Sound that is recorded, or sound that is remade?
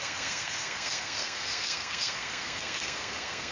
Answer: remade